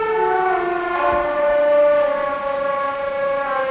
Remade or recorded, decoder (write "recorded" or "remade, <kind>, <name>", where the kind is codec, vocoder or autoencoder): recorded